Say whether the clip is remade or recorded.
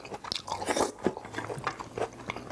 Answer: recorded